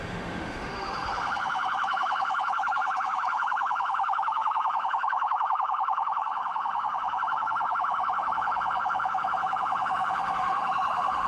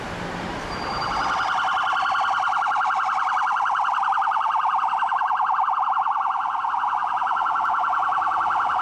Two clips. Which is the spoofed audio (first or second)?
first